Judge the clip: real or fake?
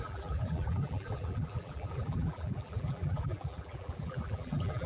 fake